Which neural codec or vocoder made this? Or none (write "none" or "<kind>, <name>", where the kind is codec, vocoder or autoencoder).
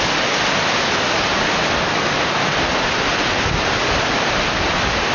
none